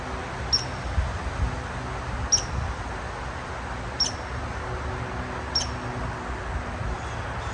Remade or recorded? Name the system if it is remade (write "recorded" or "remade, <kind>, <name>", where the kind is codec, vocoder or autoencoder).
recorded